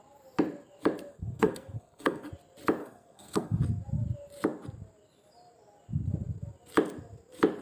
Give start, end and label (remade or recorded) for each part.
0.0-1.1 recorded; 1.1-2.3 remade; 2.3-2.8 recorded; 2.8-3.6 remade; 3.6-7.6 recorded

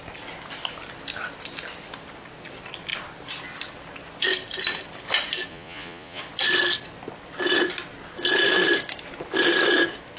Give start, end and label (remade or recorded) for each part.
0.0-5.5 recorded; 5.5-6.2 remade; 6.2-10.2 recorded

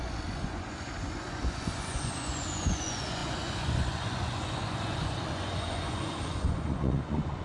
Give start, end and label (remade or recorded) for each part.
0.0-7.4 remade